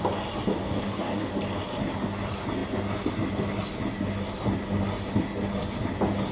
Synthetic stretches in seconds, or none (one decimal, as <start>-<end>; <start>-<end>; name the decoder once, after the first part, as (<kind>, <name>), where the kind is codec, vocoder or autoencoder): 0.5-1.3 (codec, DAC)